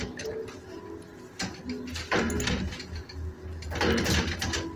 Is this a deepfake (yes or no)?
no